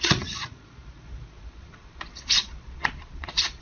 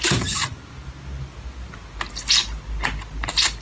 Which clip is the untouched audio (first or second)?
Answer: second